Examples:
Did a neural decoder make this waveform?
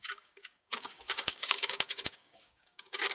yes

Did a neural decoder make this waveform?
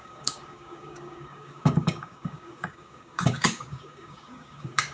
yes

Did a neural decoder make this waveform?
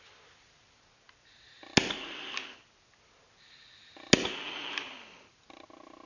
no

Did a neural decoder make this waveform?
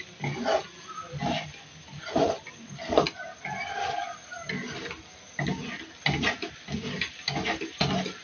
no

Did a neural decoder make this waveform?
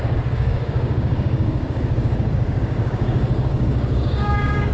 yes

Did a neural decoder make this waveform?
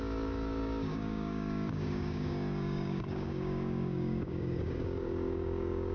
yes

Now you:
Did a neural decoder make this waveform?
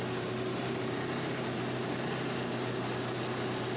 no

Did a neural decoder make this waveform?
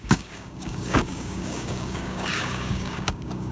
yes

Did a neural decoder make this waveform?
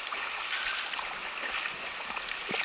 no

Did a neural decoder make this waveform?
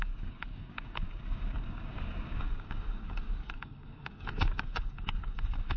yes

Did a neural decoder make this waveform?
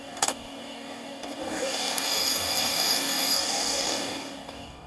yes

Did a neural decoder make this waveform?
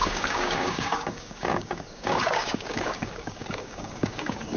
yes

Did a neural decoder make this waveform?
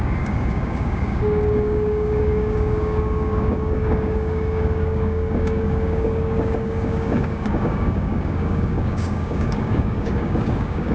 yes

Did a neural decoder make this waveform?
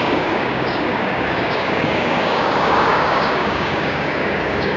yes